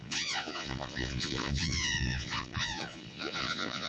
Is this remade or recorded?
remade